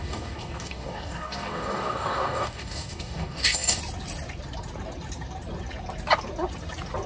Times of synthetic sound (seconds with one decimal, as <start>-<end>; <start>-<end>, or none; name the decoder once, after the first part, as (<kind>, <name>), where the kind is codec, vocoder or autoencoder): 0.0-3.8 (codec, DAC)